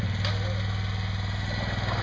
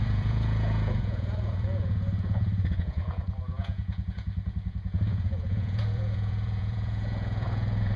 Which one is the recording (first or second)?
first